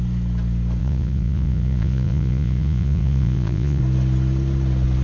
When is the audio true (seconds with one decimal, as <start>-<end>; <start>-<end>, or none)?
0.0-0.8; 3.8-5.0